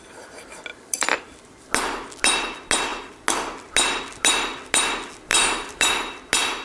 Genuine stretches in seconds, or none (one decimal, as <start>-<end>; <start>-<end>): 0.0-0.7; 1.2-5.3; 5.8-6.6